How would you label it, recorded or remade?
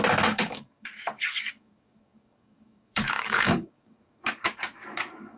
remade